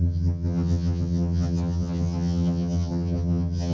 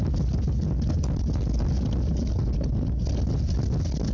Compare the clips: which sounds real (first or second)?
second